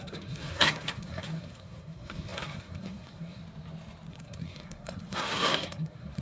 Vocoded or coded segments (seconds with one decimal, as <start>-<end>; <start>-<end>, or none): 0.0-3.4; 4.1-6.2